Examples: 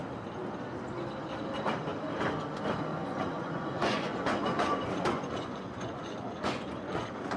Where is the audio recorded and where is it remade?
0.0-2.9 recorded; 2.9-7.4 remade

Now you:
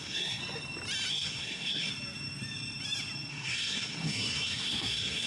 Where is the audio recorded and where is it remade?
0.0-0.4 remade; 0.4-1.1 recorded; 1.1-1.9 remade; 1.9-3.3 recorded; 3.3-5.3 remade

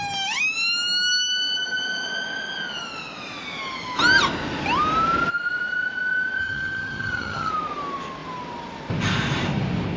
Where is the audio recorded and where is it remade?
0.0-6.4 recorded; 6.4-7.5 remade; 7.5-10.0 recorded

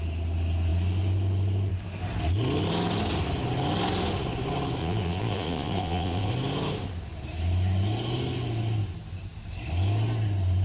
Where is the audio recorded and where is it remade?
0.0-4.8 recorded; 4.8-6.3 remade; 6.3-10.6 recorded

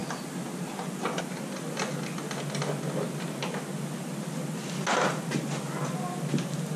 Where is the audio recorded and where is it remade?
0.0-6.8 recorded